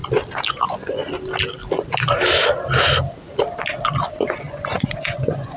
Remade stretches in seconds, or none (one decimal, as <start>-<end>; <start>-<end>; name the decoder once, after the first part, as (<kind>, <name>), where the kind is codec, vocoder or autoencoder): 0.5-1.0 (vocoder, Vocos); 4.4-5.6